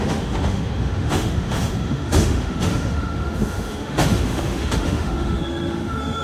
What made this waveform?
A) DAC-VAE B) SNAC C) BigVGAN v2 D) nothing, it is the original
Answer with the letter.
A